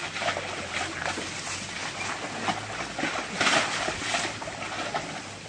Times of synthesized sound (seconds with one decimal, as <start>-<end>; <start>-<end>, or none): none